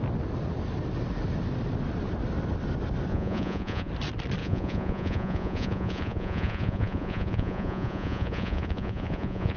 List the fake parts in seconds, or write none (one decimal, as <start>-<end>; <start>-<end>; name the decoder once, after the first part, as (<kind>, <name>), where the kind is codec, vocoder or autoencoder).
3.1-3.9 (vocoder, Vocos); 4.4-9.6